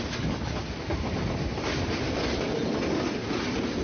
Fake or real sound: real